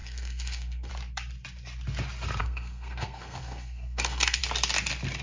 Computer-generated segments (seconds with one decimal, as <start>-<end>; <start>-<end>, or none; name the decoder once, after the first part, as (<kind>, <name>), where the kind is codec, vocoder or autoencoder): 0.0-0.9 (codec, SNAC); 2.4-4.4